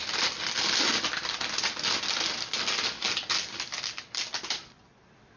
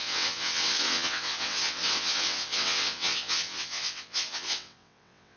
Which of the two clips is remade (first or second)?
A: second